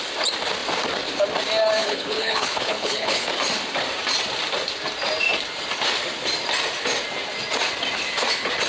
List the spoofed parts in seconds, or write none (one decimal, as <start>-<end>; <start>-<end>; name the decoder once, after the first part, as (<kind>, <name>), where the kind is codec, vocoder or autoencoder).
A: 1.8-3.3 (codec, HILCodec)